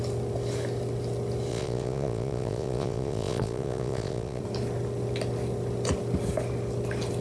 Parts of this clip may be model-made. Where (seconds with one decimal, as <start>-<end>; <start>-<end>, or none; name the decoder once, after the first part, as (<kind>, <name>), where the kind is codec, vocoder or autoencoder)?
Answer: 1.5-4.4 (vocoder, Vocos)